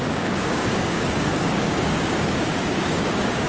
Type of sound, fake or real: fake